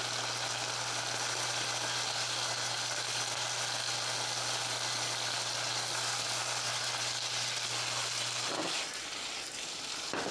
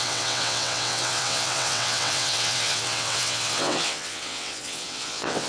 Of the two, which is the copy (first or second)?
second